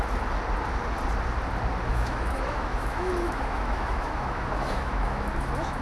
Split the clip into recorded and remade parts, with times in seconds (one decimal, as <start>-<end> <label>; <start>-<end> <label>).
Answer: 0.0-1.9 recorded; 1.9-5.8 remade